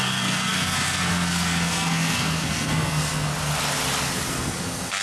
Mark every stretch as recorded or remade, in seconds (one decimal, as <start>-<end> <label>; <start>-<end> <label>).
0.0-3.3 remade; 3.3-4.3 recorded; 4.3-5.0 remade